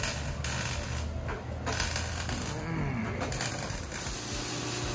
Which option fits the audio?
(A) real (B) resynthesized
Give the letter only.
A